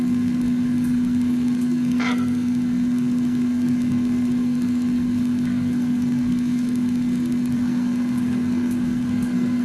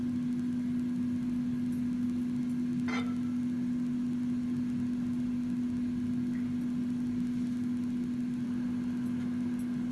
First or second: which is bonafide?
second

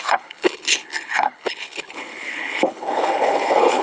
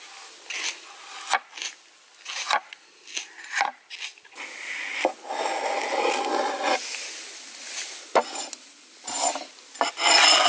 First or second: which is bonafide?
second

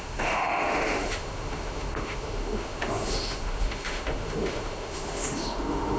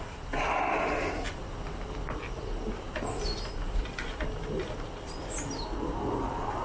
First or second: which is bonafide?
second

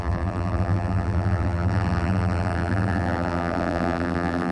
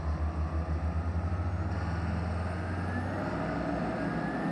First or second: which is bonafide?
second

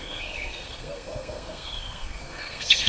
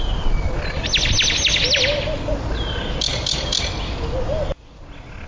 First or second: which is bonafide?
second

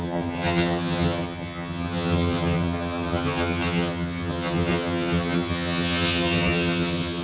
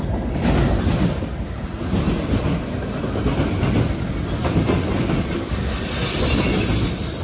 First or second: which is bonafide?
second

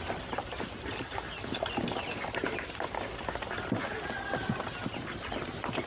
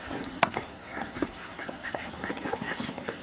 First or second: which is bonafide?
first